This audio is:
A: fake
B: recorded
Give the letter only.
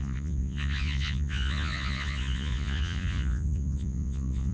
A